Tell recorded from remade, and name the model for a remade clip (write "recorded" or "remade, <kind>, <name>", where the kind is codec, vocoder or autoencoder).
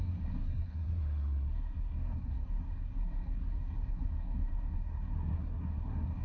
remade, codec, SNAC